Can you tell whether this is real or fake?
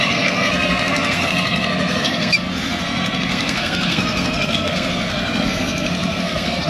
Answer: fake